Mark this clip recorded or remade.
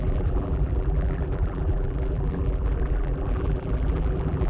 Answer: remade